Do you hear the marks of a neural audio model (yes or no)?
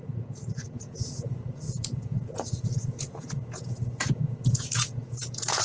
yes